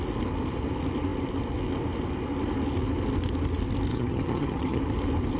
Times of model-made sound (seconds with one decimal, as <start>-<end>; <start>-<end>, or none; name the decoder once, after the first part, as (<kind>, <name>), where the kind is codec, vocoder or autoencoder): 3.9-4.8 (vocoder, HiFi-GAN)